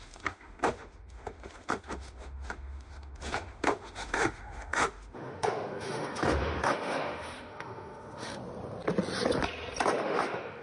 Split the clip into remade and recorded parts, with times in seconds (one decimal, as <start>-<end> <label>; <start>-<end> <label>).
0.0-8.4 remade; 8.4-10.0 recorded; 10.0-10.6 remade